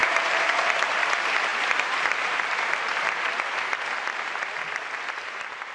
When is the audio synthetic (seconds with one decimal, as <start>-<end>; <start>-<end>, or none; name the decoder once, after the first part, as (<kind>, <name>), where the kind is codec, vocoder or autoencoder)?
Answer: 0.0-0.9 (vocoder, BigVGAN v2)